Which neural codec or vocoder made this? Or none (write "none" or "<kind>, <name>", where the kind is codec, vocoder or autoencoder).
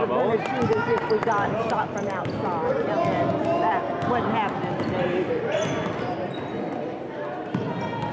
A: none